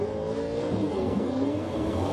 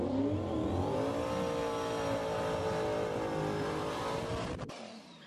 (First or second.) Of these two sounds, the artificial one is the first